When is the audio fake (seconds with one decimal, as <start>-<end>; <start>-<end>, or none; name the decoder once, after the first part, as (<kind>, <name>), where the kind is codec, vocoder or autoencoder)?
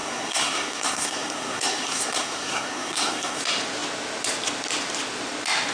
0.0-3.4 (codec, SNAC)